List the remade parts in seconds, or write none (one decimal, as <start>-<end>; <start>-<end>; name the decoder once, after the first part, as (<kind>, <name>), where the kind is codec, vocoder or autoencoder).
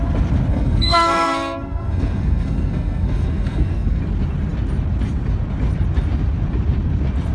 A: 0.5-4.0 (codec, SNAC)